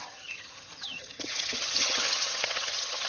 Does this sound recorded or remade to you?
remade